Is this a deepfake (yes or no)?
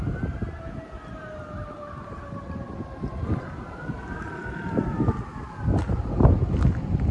no